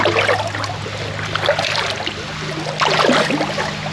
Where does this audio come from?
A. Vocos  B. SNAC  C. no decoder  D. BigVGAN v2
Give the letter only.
C